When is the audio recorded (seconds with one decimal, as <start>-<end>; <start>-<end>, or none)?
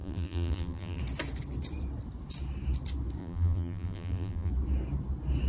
1.0-3.2; 4.5-5.5